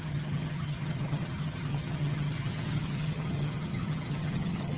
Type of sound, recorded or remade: remade